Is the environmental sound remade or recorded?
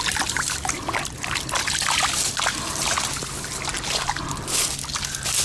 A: recorded